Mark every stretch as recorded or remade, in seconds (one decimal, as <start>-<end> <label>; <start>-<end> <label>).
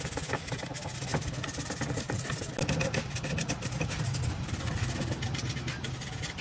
0.0-6.4 recorded